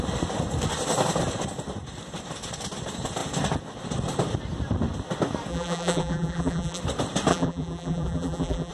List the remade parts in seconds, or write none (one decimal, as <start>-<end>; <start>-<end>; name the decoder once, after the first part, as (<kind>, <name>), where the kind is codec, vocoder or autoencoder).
5.5-6.8 (vocoder, BigVGAN v2); 7.3-8.7